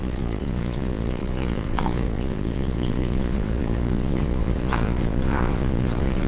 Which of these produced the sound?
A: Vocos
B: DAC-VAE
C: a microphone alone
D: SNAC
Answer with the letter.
A